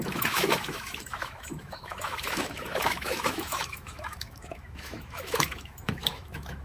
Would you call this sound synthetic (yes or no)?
yes